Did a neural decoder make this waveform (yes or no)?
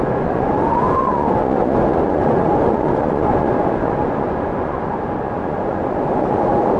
yes